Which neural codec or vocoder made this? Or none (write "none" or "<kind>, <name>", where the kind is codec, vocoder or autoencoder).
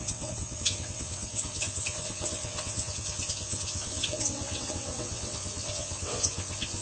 vocoder, WaveNeXt